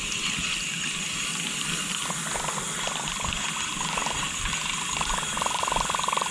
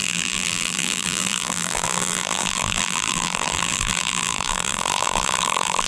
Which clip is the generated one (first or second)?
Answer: second